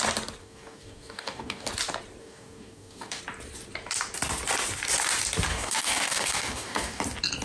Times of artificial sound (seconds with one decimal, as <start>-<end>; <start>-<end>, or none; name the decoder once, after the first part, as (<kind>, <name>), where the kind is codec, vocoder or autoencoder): 0.4-1.7 (codec, DAC); 2.2-3.2; 5.5-7.0